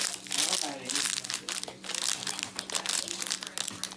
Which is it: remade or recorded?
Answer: recorded